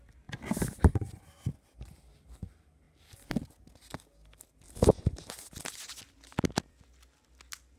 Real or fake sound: real